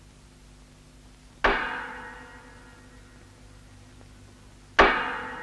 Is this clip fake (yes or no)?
no